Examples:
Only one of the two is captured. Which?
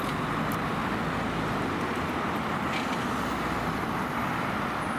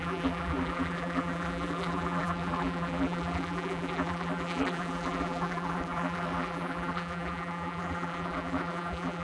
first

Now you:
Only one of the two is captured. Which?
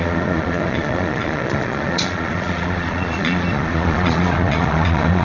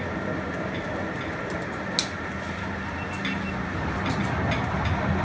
second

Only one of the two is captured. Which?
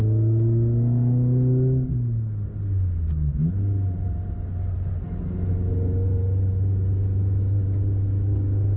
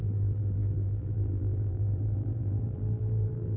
first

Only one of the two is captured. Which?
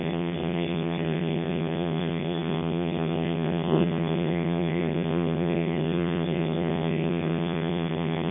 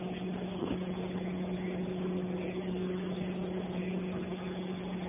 second